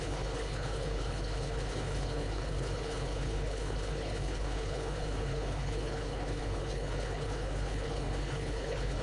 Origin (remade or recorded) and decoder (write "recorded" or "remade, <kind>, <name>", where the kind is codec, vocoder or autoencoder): remade, codec, HILCodec